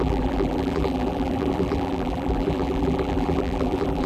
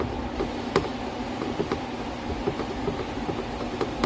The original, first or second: second